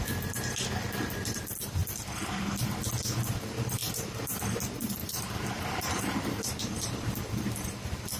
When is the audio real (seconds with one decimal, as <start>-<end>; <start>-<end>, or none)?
0.0-3.8; 4.4-5.0; 7.2-8.2